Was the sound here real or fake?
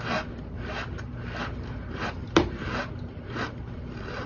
fake